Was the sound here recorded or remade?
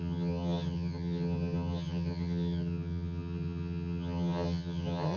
remade